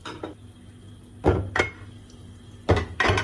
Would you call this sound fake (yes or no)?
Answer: no